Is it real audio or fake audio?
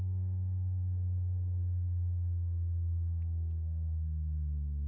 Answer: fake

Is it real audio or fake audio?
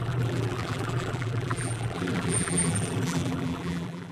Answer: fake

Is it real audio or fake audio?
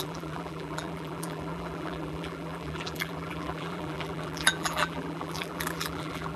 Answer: fake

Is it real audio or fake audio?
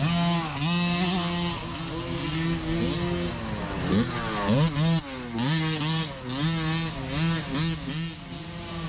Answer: real